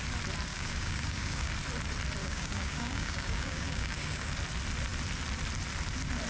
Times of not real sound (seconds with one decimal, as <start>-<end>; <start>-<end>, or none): 0.5-1.5; 2.2-4.3